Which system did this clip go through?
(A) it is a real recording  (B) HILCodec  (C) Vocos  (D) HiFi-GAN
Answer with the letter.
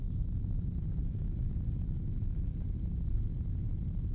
A